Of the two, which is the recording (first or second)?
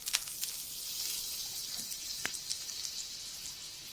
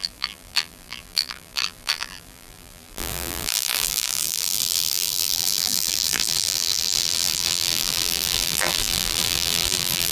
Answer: first